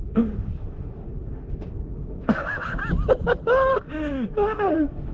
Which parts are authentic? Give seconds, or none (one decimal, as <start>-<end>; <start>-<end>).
2.8-3.7